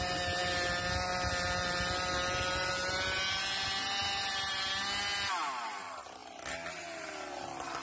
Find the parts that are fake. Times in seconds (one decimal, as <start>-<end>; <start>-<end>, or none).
none